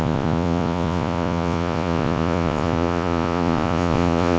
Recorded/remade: remade